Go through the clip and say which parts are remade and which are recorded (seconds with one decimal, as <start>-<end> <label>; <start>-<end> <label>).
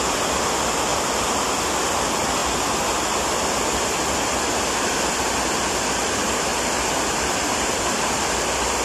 0.0-0.9 recorded; 0.9-1.7 remade; 1.7-6.5 recorded; 6.5-8.2 remade; 8.2-8.8 recorded